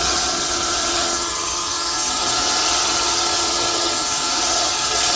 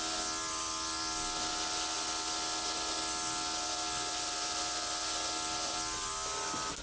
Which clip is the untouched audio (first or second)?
second